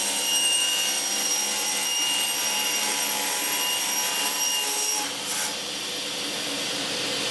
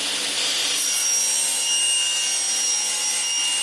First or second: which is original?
second